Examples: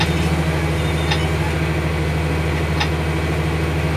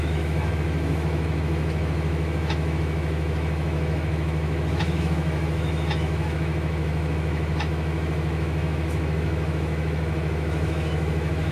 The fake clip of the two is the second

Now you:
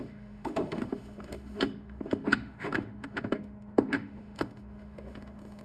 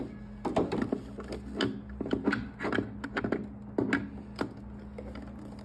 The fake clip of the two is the first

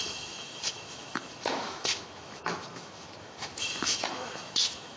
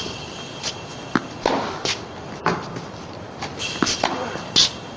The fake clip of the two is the first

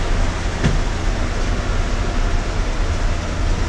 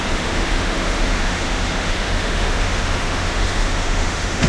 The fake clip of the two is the second